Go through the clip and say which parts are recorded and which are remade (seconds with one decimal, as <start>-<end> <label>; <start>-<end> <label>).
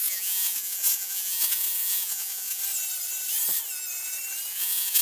0.0-2.6 remade; 2.6-4.5 recorded; 4.5-5.0 remade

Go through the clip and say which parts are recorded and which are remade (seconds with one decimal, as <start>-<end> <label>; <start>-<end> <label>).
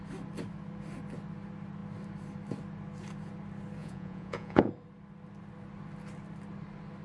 0.0-3.8 recorded; 3.8-4.7 remade; 4.7-7.0 recorded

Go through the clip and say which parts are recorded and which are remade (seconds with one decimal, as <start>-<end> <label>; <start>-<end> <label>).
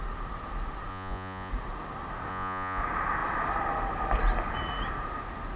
0.0-0.9 recorded; 0.9-1.5 remade; 1.5-2.3 recorded; 2.3-2.8 remade; 2.8-5.6 recorded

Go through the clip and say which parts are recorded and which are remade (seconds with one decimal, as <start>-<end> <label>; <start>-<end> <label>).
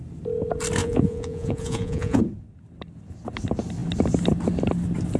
0.0-0.8 recorded; 0.8-2.2 remade; 2.2-5.2 recorded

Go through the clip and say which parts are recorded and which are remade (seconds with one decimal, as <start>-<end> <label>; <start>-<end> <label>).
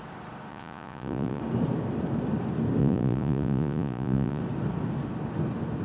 0.0-0.5 recorded; 0.5-1.4 remade; 1.4-2.8 recorded; 2.8-4.4 remade; 4.4-5.8 recorded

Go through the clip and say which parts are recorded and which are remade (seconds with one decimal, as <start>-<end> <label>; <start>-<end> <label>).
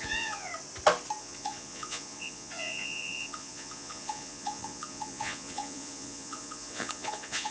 0.0-0.5 remade; 0.5-1.2 recorded; 1.2-7.5 remade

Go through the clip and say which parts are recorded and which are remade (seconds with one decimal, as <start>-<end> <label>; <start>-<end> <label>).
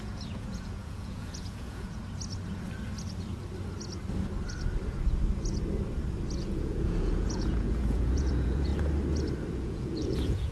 0.0-2.0 remade; 2.0-6.4 recorded; 6.4-8.7 remade; 8.7-9.5 recorded; 9.5-10.5 remade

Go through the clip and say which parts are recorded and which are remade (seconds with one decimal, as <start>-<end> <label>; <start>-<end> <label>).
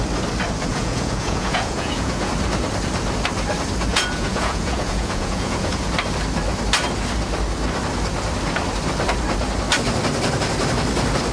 0.0-0.7 recorded; 0.7-2.3 remade; 2.3-3.9 recorded; 3.9-5.9 remade; 5.9-11.3 recorded